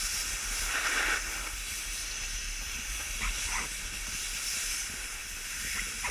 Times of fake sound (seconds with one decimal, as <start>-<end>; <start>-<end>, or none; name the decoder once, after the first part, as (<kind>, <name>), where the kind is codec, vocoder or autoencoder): 5.2-6.1 (vocoder, BigVGAN v2)